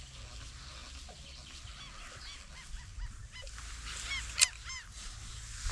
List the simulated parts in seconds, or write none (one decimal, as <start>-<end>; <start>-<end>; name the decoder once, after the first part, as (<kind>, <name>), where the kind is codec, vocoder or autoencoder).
none